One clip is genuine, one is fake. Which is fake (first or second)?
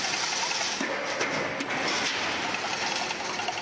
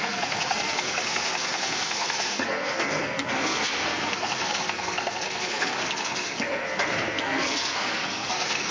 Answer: second